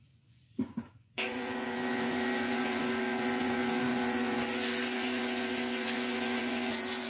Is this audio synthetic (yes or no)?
yes